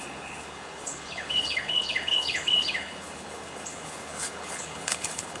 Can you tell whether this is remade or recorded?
remade